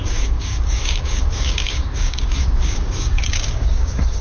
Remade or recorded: remade